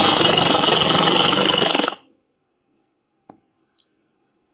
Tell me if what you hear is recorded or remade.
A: remade